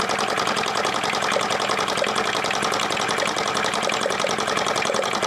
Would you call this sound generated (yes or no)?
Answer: no